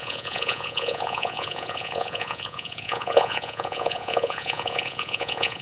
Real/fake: fake